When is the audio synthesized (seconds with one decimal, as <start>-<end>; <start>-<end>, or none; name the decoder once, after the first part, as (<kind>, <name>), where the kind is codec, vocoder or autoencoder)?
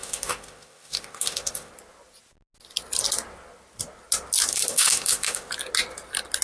0.0-1.7 (autoencoder, DAC-VAE); 4.5-5.5